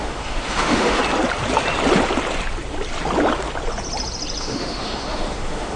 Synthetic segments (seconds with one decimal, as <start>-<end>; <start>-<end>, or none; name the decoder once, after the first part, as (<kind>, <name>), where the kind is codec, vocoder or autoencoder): 0.0-1.0 (autoencoder, DAC-VAE); 4.4-5.8